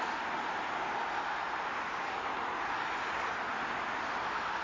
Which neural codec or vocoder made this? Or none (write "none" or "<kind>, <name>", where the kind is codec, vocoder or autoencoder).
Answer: none